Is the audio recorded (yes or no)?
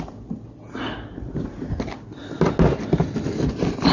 yes